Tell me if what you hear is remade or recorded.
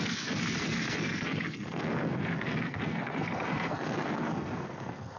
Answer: remade